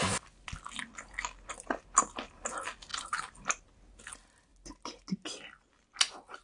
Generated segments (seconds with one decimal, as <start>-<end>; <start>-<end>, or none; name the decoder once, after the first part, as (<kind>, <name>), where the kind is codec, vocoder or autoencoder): none